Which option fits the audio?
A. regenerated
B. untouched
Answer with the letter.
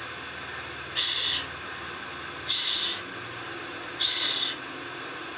B